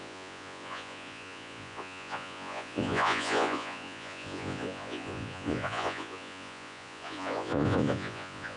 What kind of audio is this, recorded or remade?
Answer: remade